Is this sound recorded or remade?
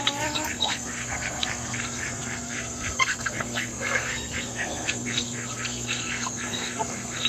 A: remade